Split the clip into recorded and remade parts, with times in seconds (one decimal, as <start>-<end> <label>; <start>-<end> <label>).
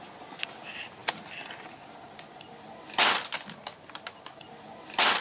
0.0-5.2 recorded